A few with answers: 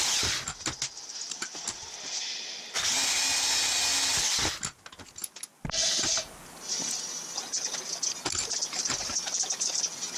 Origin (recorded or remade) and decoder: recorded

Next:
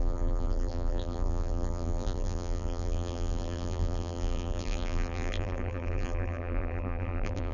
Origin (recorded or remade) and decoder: remade, vocoder, BigVGAN v2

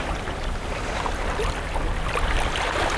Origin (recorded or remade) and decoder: remade, vocoder, BigVGAN v2